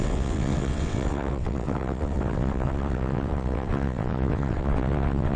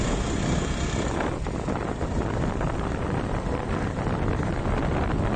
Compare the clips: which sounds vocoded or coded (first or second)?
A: first